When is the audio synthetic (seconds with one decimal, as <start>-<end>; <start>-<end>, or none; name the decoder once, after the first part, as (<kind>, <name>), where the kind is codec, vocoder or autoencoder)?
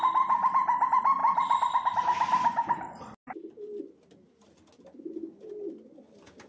none